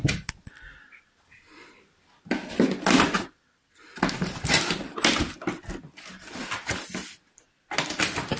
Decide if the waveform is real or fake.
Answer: real